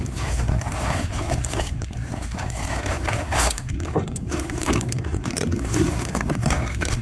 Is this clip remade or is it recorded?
remade